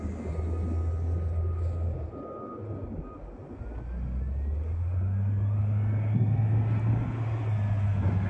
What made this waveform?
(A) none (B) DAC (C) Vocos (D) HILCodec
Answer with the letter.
A